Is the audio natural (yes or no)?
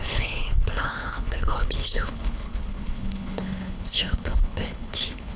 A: no